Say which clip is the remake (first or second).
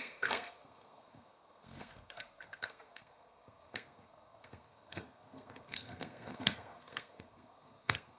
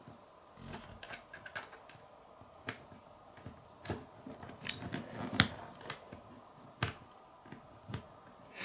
first